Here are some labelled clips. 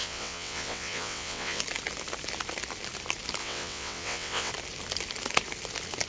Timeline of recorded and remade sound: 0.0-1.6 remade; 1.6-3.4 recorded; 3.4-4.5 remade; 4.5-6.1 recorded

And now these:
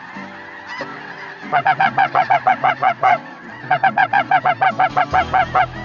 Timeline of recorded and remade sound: 0.0-0.9 recorded; 0.9-4.4 remade; 4.4-5.8 recorded

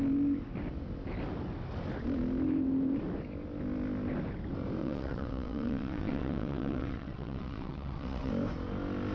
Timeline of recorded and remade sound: 0.0-4.8 recorded; 4.8-8.3 remade; 8.3-9.1 recorded